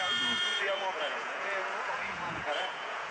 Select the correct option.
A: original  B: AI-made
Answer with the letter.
B